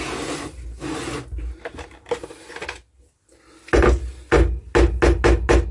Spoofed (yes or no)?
no